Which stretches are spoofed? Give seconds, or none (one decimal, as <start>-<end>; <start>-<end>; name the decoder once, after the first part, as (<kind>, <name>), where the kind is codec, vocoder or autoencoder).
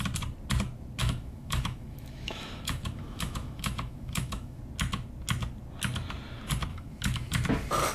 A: 1.0-4.6 (autoencoder, DAC-VAE); 6.7-7.3